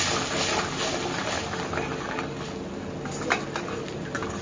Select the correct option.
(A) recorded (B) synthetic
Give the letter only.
A